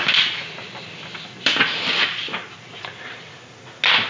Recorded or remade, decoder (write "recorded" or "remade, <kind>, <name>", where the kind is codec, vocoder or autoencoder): recorded